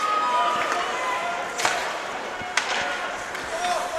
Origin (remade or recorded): recorded